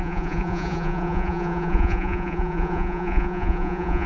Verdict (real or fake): fake